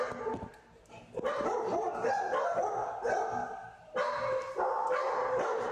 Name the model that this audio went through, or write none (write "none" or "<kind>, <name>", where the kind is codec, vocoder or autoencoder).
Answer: none